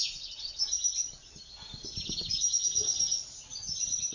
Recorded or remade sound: recorded